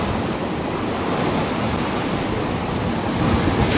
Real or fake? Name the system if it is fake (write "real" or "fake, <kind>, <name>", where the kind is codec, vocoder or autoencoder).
real